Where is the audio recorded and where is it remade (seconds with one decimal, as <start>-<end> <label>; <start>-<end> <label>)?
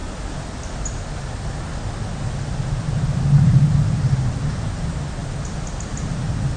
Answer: 0.0-6.6 recorded